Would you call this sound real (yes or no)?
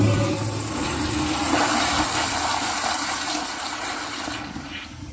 yes